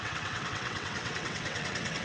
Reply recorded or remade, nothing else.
remade